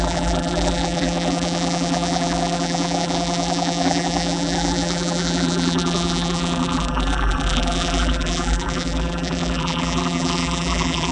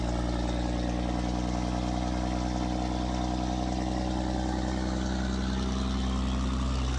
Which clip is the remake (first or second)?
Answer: first